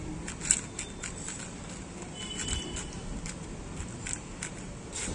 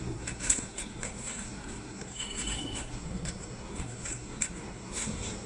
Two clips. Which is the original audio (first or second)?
first